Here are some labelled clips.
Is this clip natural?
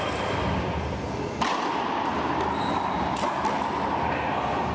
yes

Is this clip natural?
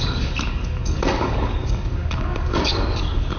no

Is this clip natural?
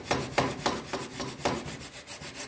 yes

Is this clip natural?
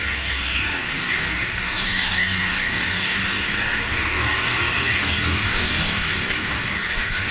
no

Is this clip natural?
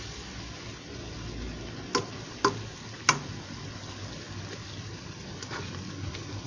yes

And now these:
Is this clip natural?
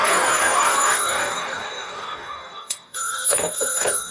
no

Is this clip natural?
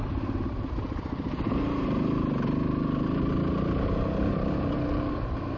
yes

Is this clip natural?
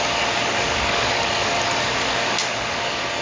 no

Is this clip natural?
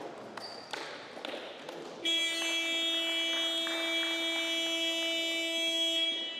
yes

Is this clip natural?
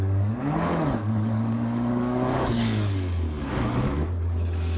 no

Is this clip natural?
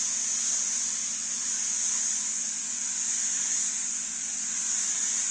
yes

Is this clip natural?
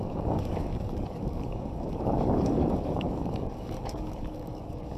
no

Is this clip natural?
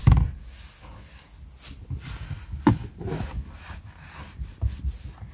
yes